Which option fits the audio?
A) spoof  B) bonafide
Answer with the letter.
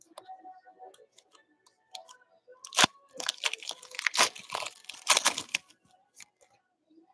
B